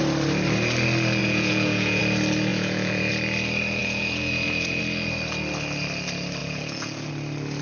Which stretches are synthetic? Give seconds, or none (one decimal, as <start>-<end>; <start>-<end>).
1.2-2.0; 2.5-3.1; 3.8-4.8; 6.4-7.1